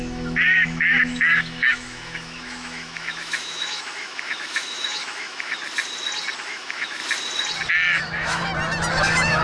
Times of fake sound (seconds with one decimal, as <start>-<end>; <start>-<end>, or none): 0.0-5.6; 6.4-7.0; 7.7-8.5; 9.0-9.4